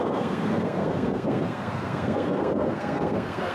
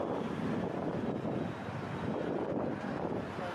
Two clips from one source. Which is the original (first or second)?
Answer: second